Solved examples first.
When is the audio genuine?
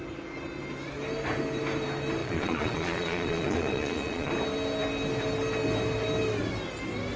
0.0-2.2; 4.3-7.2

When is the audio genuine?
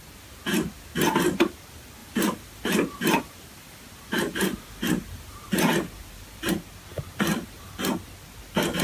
0.0-2.0; 6.5-6.9; 7.7-8.8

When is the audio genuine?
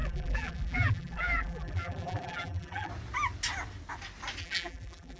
2.9-4.4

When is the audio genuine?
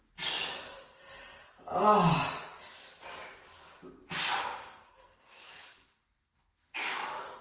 0.0-4.5; 6.7-7.4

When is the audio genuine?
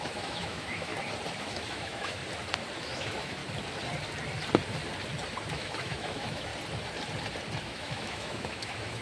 0.9-1.4; 2.2-2.8; 3.4-5.5; 6.5-7.6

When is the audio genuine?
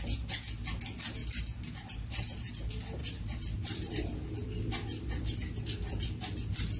0.0-1.2; 2.5-3.0; 4.1-6.8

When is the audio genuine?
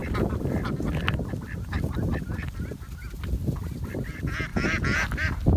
3.4-4.5; 5.1-5.6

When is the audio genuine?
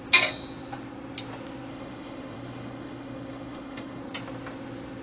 0.0-1.7; 4.0-5.0